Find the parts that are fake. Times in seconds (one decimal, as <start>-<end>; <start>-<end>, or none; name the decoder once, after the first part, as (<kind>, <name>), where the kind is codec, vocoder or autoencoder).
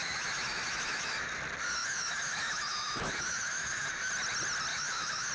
0.0-1.3 (autoencoder, DAC-VAE); 1.8-4.1; 4.7-5.3